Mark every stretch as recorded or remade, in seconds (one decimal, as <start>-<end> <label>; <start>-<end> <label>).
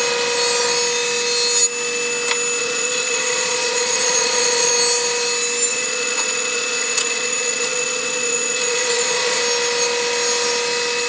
0.0-2.6 recorded; 2.6-4.7 remade; 4.7-5.7 recorded; 5.7-9.4 remade; 9.4-11.1 recorded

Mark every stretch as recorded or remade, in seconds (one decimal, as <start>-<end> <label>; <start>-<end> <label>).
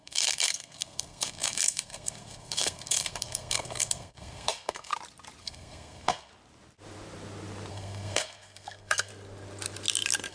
0.0-4.9 remade; 4.9-5.4 recorded; 5.4-6.3 remade; 6.3-7.7 recorded; 7.7-9.1 remade; 9.1-10.3 recorded